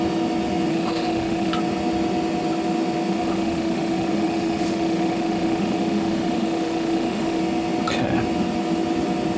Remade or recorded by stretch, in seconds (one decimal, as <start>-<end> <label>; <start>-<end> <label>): 0.0-0.7 recorded; 0.7-1.5 remade; 1.5-3.1 recorded; 3.1-7.4 remade; 7.4-9.4 recorded